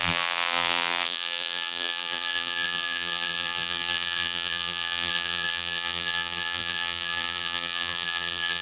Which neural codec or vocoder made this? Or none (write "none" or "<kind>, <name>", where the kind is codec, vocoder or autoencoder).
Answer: vocoder, BigVGAN v2